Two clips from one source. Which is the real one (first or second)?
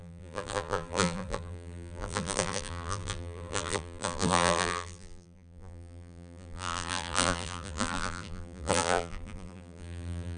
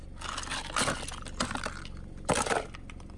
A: second